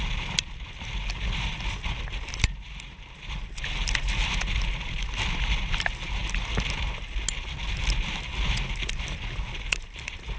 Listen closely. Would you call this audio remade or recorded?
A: recorded